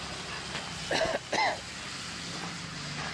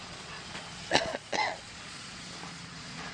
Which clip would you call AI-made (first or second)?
second